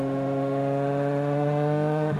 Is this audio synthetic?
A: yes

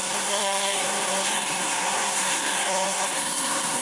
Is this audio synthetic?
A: yes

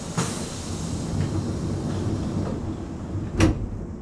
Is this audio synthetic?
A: no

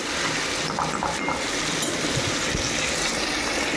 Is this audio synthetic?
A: no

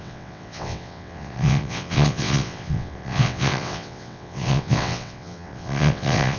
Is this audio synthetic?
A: yes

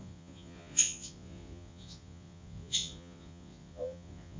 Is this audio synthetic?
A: yes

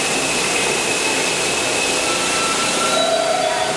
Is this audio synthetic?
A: no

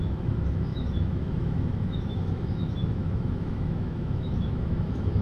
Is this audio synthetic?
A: yes